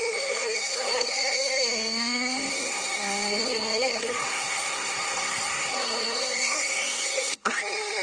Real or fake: fake